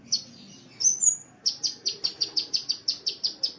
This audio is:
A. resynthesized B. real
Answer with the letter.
B